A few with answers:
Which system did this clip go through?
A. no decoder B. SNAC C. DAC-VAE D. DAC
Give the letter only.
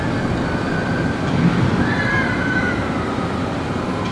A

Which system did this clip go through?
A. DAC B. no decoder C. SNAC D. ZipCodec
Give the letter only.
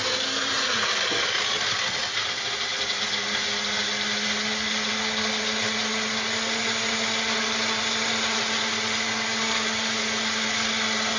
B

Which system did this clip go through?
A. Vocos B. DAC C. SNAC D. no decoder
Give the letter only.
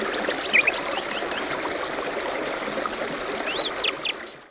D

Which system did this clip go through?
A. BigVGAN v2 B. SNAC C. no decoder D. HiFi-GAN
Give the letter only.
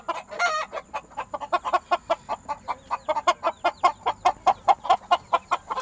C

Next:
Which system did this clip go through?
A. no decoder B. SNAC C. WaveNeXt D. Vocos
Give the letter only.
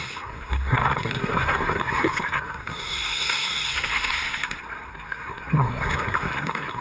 B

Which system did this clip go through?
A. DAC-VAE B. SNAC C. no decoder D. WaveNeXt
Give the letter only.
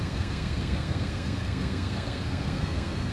B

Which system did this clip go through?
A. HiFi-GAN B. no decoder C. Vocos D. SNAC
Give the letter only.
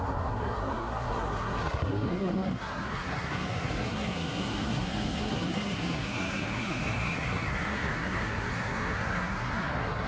D